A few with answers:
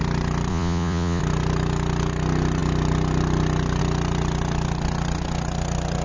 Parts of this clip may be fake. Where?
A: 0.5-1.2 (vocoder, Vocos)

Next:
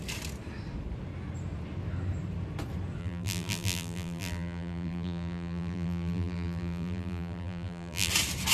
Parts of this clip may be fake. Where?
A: 3.0-8.1 (vocoder, BigVGAN v2)

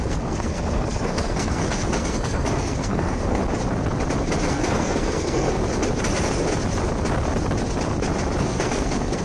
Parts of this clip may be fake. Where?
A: 0.0-3.4 (codec, SNAC); 4.5-5.6; 8.4-9.2

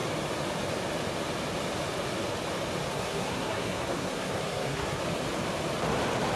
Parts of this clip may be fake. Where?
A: 2.9-5.0 (codec, SNAC)